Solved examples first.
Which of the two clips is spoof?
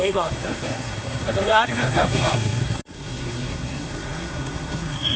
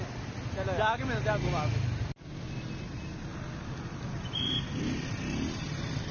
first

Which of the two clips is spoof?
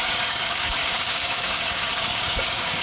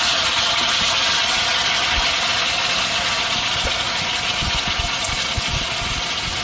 first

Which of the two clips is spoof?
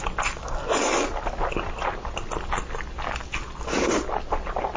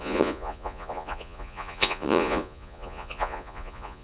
second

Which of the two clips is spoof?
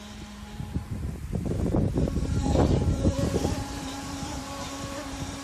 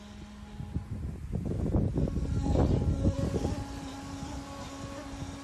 first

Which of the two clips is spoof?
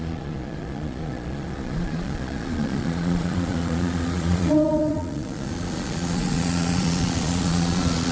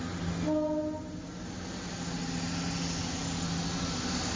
first